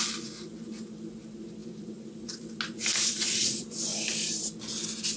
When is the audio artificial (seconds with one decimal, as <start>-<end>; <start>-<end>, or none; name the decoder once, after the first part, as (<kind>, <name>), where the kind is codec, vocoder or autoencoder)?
1.6-2.5 (vocoder, BigVGAN v2); 2.9-4.5